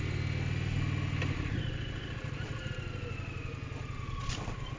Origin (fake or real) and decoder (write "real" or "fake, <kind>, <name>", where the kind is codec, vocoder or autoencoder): real